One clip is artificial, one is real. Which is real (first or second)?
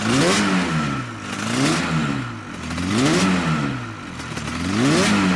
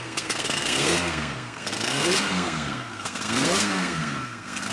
first